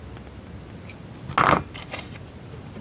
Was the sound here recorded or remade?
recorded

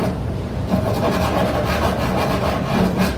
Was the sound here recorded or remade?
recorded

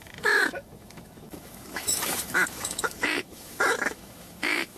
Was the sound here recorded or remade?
remade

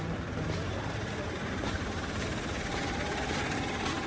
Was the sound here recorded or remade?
recorded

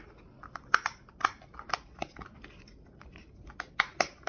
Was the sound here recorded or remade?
recorded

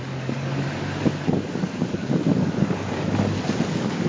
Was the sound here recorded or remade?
remade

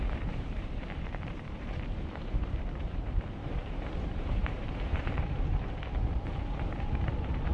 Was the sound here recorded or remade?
remade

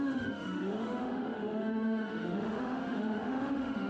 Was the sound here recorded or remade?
remade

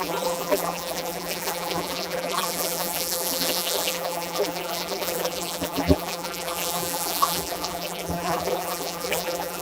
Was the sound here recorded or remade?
remade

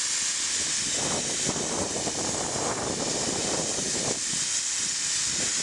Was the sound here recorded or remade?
recorded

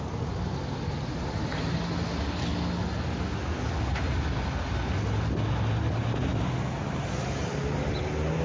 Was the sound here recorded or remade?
recorded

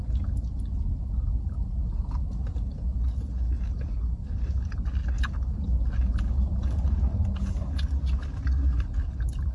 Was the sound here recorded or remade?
recorded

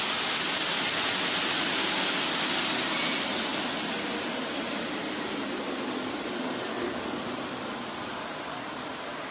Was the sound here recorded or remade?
recorded